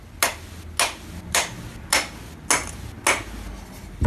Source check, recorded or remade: recorded